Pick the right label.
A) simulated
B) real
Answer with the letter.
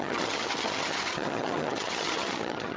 A